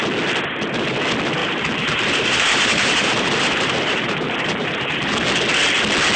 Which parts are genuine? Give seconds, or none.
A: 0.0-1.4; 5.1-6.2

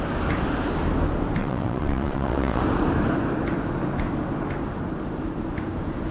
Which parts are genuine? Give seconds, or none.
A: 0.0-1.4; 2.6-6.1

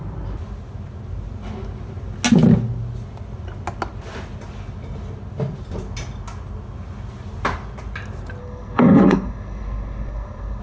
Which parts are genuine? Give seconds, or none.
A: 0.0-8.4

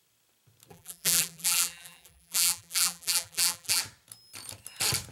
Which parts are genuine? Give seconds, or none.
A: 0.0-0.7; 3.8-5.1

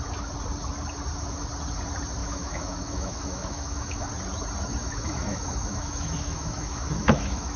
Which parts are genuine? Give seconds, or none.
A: 0.0-2.2; 4.1-4.8

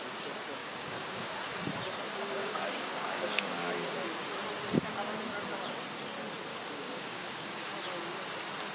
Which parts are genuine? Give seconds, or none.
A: 0.0-0.6; 1.3-2.4; 3.7-6.5; 7.6-8.7

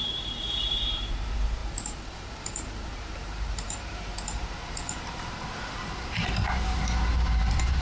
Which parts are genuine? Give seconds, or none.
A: none